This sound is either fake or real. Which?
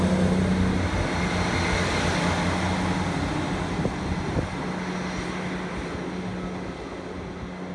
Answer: real